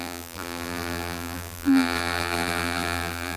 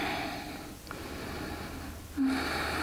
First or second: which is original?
second